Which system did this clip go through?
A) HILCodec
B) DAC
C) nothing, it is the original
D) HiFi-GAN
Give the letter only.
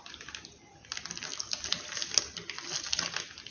C